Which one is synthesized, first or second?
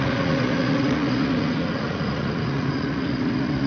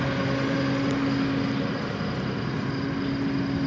first